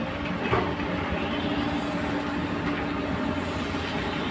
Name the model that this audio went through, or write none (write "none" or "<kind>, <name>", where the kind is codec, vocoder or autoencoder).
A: none